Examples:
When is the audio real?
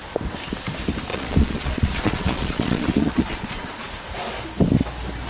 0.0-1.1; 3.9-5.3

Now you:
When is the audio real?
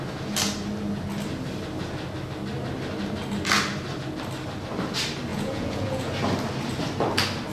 0.0-5.3; 6.1-7.5